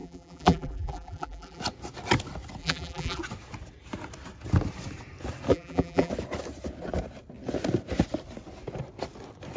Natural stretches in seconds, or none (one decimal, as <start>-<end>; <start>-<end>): 1.6-2.6; 3.2-5.5; 6.1-9.6